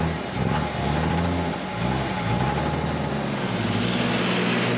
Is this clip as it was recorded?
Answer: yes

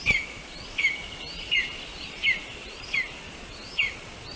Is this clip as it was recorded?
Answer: yes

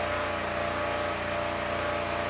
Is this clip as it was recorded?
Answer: yes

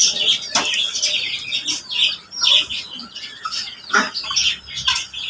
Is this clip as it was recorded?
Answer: yes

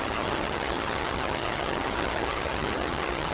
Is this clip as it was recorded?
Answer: no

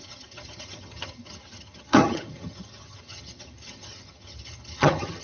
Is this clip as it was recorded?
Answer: no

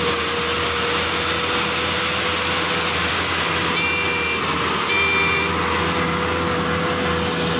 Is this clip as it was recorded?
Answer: yes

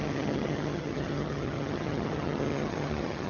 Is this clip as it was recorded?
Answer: no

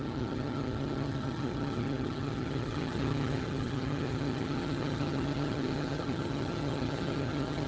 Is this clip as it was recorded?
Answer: no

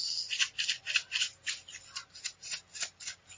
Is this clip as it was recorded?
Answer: yes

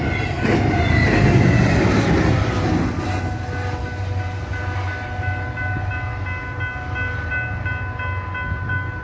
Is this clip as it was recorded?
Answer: yes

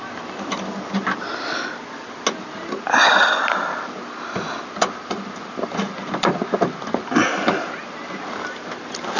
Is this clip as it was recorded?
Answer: yes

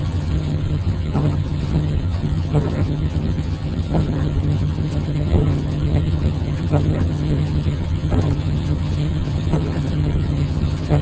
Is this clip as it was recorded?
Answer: no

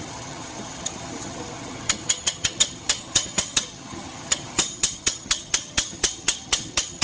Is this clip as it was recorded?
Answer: no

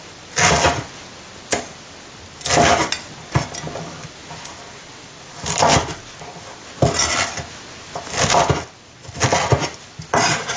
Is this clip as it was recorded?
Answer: yes